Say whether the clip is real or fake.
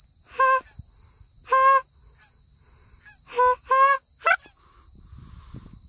real